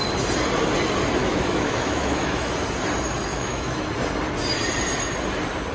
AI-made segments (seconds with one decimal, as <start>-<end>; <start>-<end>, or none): 1.2-2.5; 3.3-3.8